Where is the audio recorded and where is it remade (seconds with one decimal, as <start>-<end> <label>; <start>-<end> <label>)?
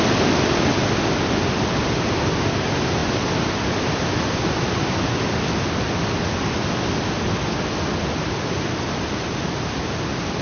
0.0-10.4 recorded